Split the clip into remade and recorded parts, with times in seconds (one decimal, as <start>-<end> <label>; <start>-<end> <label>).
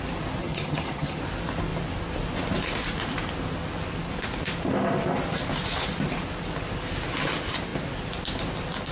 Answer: 0.0-0.4 recorded; 0.4-1.2 remade; 1.2-8.9 recorded